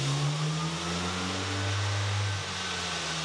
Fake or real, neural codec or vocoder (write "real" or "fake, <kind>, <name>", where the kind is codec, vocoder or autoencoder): real